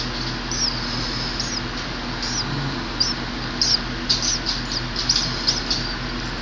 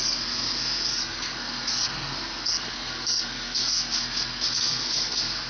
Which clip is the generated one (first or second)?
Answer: second